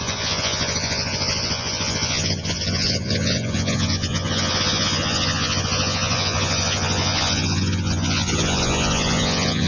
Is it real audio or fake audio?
fake